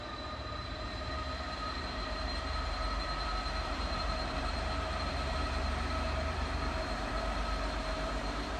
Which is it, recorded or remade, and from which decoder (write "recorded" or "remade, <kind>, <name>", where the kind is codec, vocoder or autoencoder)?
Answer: remade, vocoder, BigVGAN v2